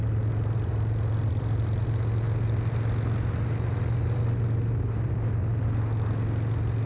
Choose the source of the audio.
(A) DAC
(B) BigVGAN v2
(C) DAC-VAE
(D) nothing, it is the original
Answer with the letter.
D